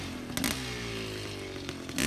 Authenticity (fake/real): real